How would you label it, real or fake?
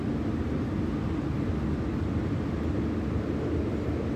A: real